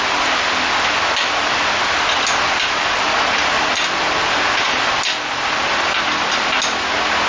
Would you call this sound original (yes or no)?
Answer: yes